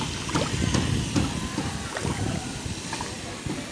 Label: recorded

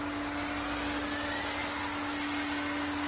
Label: recorded